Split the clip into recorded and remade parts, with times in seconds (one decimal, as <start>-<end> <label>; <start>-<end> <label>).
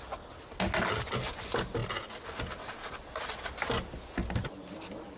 0.0-5.2 recorded